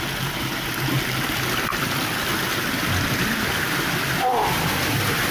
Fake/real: real